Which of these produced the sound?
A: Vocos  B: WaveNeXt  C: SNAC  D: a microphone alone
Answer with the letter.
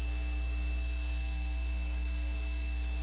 C